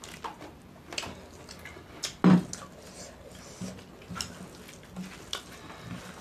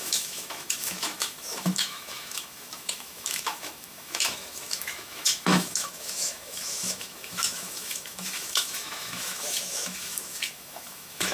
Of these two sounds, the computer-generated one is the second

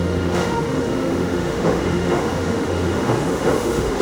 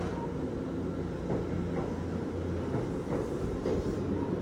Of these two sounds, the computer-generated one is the first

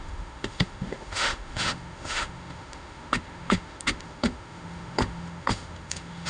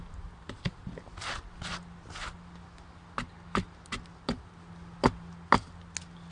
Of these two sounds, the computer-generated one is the first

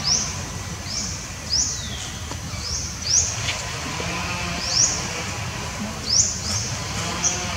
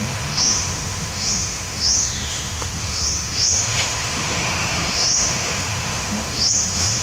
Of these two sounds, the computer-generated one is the second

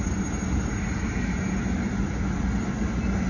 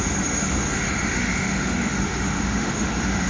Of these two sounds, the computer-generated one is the second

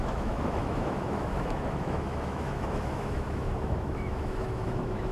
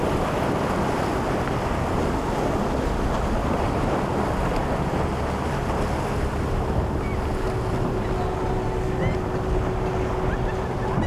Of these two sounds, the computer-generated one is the first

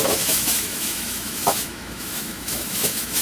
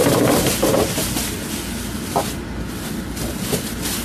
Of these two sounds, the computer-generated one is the first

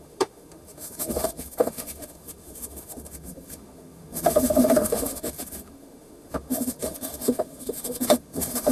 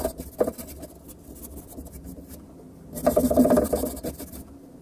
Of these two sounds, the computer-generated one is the first